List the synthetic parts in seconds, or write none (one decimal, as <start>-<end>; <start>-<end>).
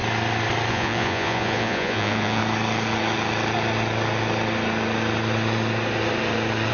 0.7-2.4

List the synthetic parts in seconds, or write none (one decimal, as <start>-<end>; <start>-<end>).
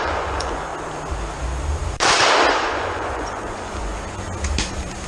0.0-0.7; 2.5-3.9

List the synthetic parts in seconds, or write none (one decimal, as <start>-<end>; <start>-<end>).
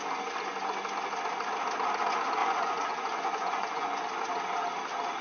2.4-4.0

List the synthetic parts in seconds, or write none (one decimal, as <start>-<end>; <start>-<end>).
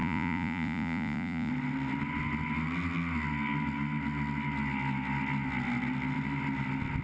0.0-1.5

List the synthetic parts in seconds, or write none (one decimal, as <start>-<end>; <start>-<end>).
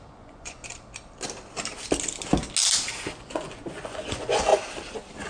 0.0-0.6; 3.2-4.5